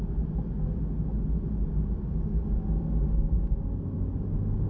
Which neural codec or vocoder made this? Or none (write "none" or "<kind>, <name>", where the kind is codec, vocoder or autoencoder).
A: none